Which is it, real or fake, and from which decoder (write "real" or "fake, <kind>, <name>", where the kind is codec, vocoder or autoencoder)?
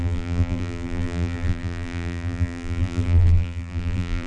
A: fake, vocoder, BigVGAN v2